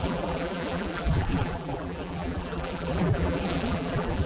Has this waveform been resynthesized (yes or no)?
yes